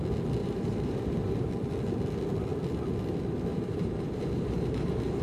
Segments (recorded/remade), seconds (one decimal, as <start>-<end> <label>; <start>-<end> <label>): 0.0-0.4 recorded; 0.4-1.5 remade; 1.5-3.5 recorded; 3.5-5.2 remade